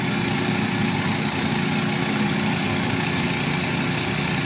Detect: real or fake real